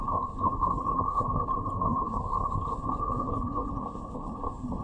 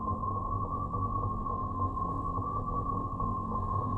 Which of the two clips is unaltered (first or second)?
second